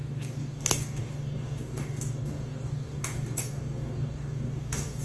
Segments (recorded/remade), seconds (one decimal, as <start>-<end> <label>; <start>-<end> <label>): 0.0-5.0 remade